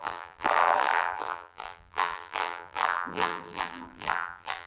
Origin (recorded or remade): remade